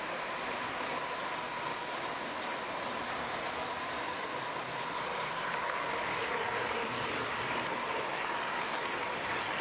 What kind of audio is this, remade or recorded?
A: recorded